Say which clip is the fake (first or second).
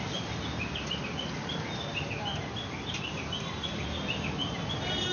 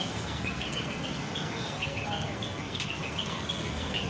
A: second